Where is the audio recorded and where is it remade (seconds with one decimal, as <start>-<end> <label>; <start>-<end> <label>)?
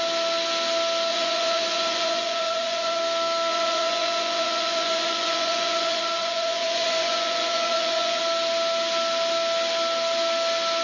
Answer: 0.0-1.1 recorded; 1.1-3.0 remade; 3.0-3.5 recorded; 3.5-8.2 remade; 8.2-10.8 recorded